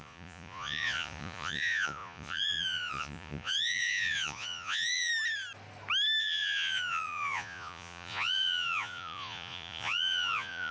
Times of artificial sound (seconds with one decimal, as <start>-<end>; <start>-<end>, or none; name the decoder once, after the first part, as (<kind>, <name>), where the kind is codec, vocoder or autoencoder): 0.0-5.1 (vocoder, Vocos); 6.2-10.7